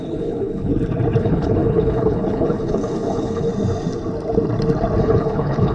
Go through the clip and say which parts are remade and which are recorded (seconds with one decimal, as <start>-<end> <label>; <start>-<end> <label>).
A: 0.0-0.7 remade; 0.7-1.2 recorded; 1.2-3.5 remade; 3.5-5.0 recorded; 5.0-5.7 remade